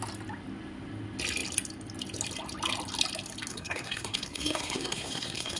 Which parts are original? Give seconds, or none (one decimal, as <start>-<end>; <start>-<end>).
0.0-3.5

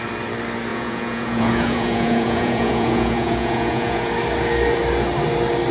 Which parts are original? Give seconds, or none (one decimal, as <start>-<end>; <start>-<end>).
0.0-0.7; 4.1-5.7

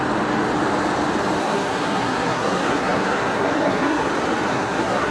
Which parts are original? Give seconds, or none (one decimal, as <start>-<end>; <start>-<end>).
0.0-1.4; 4.1-4.5

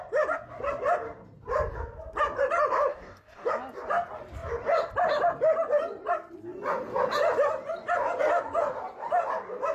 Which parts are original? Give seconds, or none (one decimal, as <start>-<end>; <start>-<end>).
0.0-2.9; 3.5-9.7

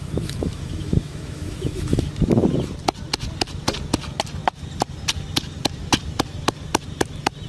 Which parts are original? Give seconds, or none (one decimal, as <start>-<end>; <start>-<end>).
2.1-7.5

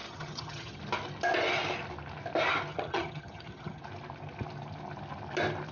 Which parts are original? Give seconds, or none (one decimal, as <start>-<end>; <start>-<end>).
0.8-2.7; 3.8-5.7

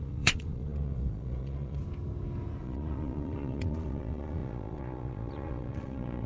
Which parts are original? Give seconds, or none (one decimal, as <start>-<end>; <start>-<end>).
1.8-2.6

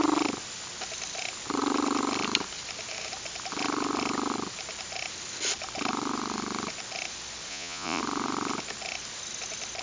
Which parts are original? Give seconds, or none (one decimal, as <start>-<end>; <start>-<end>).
0.0-7.5; 8.0-9.8